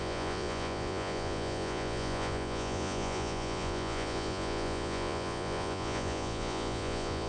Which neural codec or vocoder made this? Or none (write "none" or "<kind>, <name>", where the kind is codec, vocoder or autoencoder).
vocoder, Vocos